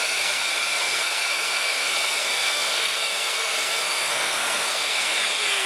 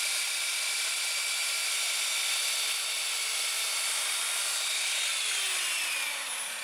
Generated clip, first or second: first